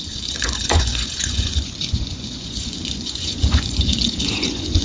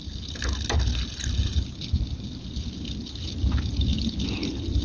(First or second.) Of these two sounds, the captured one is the second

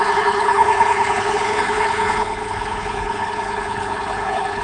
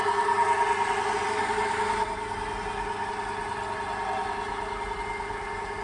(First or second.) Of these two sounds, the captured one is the second